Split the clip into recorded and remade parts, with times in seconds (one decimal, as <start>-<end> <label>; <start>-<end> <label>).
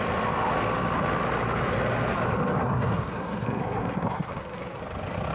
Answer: 0.0-2.6 recorded; 2.6-4.8 remade; 4.8-5.3 recorded